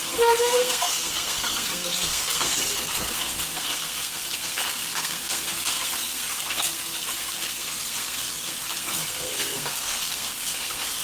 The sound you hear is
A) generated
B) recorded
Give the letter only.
A